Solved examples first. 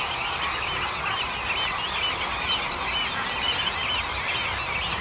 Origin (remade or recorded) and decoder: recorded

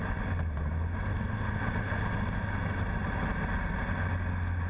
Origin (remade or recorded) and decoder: recorded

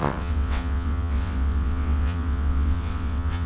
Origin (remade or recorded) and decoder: remade, vocoder, WaveNeXt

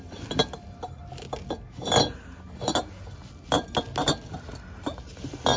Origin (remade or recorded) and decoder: recorded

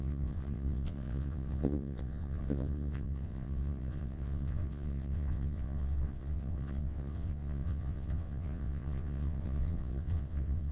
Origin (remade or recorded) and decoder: remade, vocoder, WaveNeXt